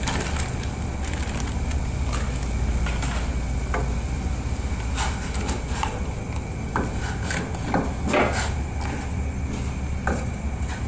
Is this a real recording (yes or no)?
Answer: yes